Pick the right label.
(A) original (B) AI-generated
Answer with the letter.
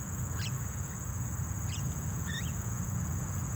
B